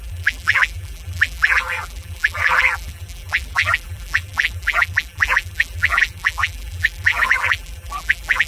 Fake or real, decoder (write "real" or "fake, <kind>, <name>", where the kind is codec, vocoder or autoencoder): fake, vocoder, BigVGAN v2